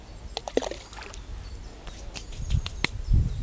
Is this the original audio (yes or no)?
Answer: yes